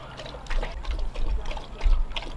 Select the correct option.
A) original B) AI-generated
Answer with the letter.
A